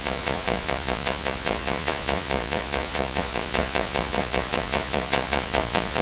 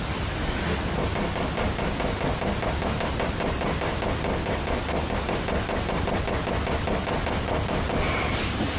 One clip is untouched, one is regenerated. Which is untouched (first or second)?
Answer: second